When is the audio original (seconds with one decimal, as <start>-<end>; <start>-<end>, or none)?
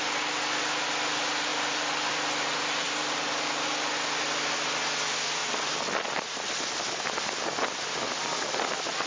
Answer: 0.0-1.5; 3.3-5.4; 7.4-9.1